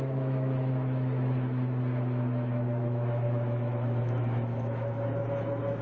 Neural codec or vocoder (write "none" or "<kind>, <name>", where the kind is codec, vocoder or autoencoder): autoencoder, DAC-VAE